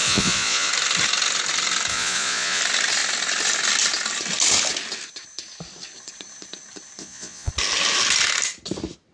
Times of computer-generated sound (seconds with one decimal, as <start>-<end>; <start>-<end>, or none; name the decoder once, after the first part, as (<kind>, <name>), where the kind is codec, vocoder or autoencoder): 0.0-0.7 (vocoder, Vocos); 1.9-2.6; 7.0-7.5